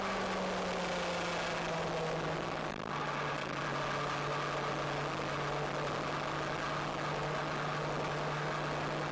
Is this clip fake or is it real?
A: real